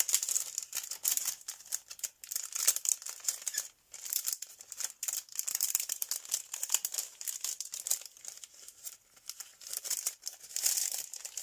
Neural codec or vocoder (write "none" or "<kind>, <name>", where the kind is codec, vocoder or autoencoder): none